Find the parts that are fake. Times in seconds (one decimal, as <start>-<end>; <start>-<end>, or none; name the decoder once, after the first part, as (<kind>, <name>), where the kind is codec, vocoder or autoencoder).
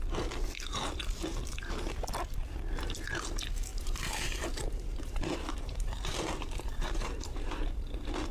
3.7-7.6 (vocoder, BigVGAN v2)